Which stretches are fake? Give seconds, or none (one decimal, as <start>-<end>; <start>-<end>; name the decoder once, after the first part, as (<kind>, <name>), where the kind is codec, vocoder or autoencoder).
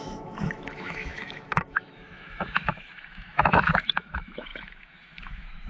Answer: 0.0-5.7 (autoencoder, DAC-VAE)